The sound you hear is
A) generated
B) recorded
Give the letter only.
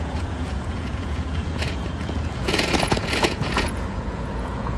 A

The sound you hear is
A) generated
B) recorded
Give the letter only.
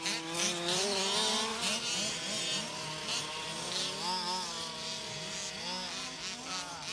B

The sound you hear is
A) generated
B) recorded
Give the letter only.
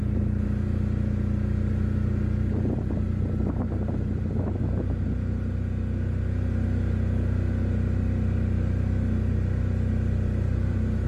B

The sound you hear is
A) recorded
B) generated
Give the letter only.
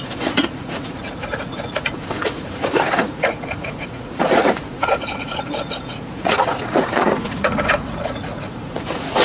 B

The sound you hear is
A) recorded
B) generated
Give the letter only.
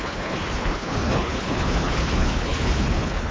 B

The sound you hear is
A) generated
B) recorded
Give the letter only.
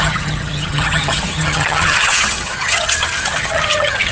A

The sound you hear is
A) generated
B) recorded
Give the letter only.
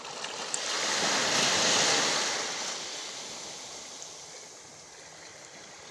B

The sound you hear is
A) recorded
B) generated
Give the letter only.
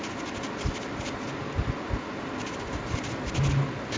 A